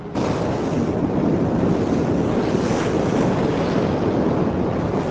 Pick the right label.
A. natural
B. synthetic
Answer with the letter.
A